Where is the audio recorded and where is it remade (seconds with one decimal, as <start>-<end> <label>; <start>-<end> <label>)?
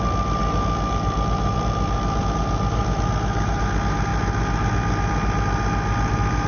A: 0.0-0.4 recorded; 0.4-2.2 remade; 2.2-2.8 recorded; 2.8-3.6 remade; 3.6-6.5 recorded